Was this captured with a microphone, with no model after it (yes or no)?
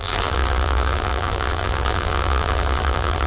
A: no